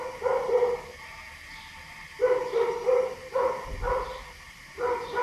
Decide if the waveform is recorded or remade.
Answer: recorded